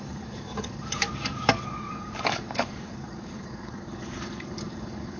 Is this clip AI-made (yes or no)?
yes